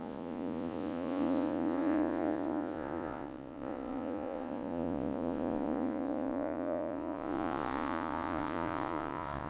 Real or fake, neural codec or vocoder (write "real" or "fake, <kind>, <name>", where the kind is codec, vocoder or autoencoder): fake, vocoder, Vocos